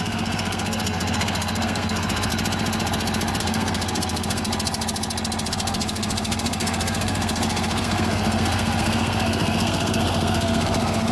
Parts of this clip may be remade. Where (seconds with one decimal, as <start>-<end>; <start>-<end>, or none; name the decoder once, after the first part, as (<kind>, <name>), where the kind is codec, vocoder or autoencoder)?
0.0-2.3 (codec, SNAC); 3.4-4.5; 5.5-11.1